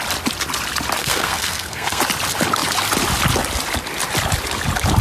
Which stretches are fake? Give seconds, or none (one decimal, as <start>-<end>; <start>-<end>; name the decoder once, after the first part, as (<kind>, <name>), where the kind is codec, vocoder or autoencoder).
1.0-2.0 (codec, SNAC)